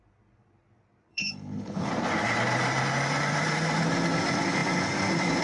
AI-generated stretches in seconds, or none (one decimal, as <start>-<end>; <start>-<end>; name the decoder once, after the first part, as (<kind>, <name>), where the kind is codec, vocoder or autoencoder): 1.1-1.9 (codec, HILCodec)